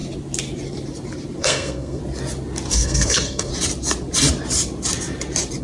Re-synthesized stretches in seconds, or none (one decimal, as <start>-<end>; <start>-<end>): 1.4-2.0; 2.7-3.5